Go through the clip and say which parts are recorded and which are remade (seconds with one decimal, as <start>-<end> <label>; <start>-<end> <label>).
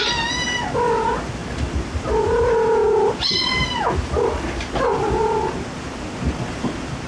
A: 0.0-7.1 remade